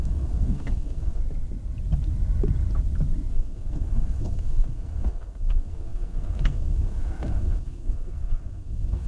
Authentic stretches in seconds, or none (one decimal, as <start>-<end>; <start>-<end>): 1.2-3.3